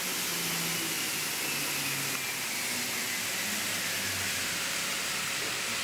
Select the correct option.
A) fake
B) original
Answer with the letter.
B